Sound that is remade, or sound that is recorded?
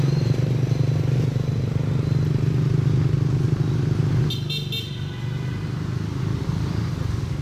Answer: recorded